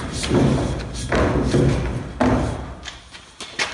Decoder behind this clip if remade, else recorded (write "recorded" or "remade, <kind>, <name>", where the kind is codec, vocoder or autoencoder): recorded